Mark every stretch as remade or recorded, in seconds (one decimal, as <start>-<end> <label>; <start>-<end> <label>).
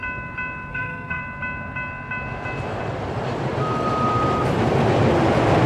0.0-0.7 recorded; 0.7-1.2 remade; 1.2-5.7 recorded